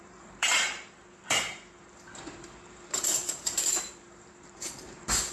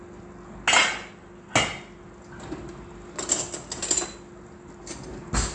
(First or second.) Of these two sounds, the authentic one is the second